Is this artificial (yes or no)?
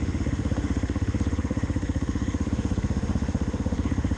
yes